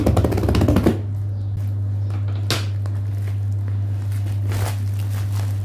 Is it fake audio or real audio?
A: real